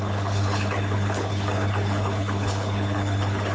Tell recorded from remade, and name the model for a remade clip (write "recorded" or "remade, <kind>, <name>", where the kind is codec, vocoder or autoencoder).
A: remade, codec, HILCodec